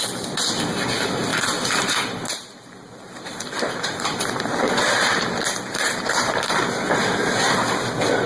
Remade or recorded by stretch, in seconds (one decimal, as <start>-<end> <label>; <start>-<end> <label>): 0.0-1.3 recorded; 1.3-6.3 remade; 6.3-8.3 recorded